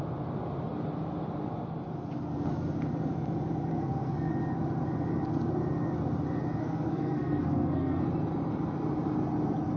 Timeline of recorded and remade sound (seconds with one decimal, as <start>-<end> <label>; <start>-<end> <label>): 0.0-3.7 recorded; 3.7-4.3 remade; 4.3-6.6 recorded; 6.6-8.0 remade; 8.0-9.8 recorded

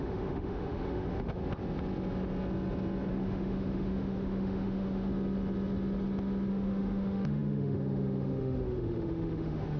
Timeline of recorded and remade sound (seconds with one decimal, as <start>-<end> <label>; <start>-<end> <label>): 0.0-1.4 remade; 1.4-3.1 recorded; 3.1-5.1 remade; 5.1-6.5 recorded; 6.5-9.8 remade